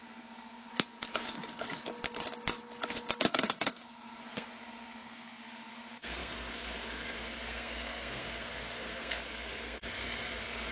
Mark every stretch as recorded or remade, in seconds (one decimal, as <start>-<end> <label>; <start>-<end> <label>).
0.0-0.7 remade; 0.7-3.3 recorded; 3.3-10.7 remade

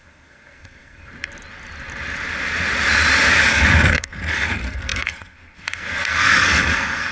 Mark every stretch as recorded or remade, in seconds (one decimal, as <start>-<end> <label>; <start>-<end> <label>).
0.0-1.1 remade; 1.1-3.5 recorded; 3.5-7.1 remade

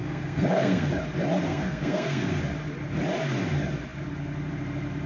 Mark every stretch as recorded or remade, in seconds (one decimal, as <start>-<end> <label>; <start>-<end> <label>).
0.0-0.9 remade; 0.9-1.4 recorded; 1.4-2.4 remade; 2.4-5.1 recorded

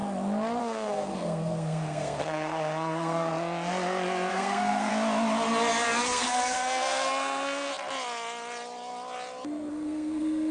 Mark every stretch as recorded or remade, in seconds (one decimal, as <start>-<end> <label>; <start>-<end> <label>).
0.0-0.6 recorded; 0.6-3.3 remade; 3.3-4.3 recorded; 4.3-4.9 remade; 4.9-6.0 recorded; 6.0-7.7 remade; 7.7-9.7 recorded; 9.7-10.5 remade

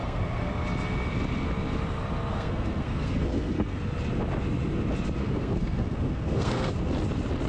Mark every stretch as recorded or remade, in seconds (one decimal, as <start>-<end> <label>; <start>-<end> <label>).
0.0-0.5 remade; 0.5-2.3 recorded; 2.3-3.8 remade; 3.8-5.2 recorded; 5.2-6.9 remade; 6.9-7.5 recorded

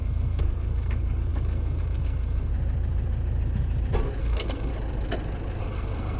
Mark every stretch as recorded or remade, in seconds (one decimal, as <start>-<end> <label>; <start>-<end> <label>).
0.0-2.5 remade; 2.5-4.2 recorded; 4.2-4.7 remade; 4.7-5.6 recorded; 5.6-6.2 remade